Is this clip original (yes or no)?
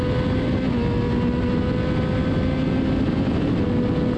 yes